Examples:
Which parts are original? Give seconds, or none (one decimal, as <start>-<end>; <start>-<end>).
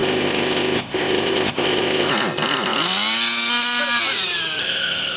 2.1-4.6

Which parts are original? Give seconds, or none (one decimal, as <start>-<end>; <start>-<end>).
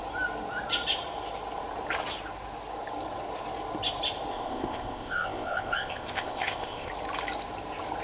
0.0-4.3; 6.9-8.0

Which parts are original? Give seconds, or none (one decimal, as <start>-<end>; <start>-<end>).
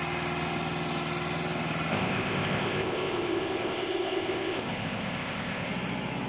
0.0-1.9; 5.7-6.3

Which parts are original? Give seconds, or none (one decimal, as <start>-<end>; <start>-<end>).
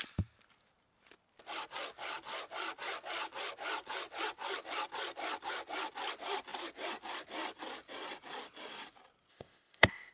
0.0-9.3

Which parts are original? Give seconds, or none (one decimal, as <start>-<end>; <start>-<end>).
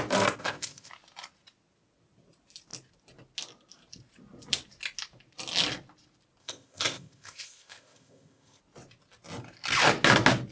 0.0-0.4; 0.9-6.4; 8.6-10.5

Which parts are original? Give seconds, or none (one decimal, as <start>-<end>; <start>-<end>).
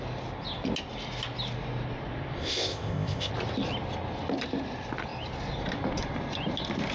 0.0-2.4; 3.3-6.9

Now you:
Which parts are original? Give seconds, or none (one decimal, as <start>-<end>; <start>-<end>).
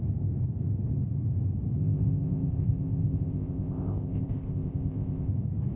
0.0-1.8; 5.3-5.8